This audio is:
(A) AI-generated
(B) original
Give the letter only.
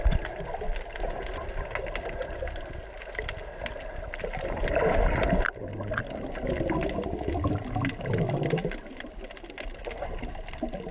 B